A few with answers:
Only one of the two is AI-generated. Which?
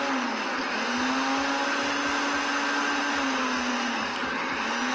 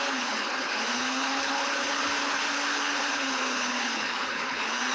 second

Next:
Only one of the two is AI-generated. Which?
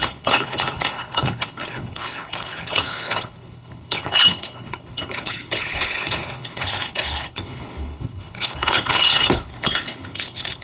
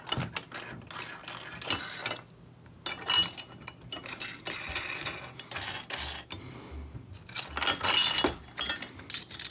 first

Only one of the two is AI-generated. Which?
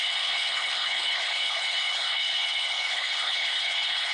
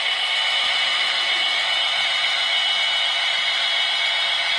first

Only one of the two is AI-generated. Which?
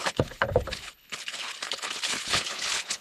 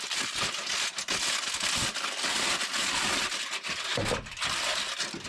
first